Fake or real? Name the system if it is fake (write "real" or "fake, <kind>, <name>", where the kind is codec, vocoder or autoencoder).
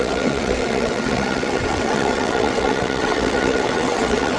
fake, vocoder, WaveNeXt